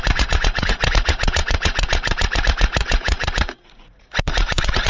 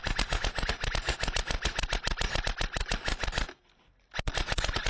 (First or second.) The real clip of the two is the second